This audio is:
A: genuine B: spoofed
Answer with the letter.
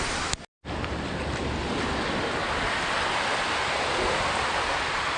A